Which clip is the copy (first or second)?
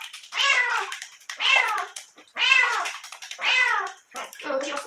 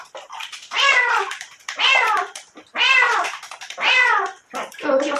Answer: first